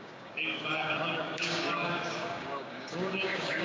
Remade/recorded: remade